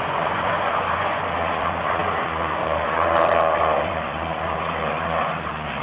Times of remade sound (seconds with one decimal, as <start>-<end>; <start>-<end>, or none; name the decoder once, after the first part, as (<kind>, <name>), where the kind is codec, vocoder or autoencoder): 0.0-5.8 (vocoder, Vocos)